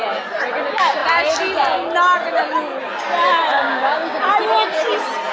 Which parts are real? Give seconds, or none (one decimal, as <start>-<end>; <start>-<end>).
0.0-3.5; 4.2-5.3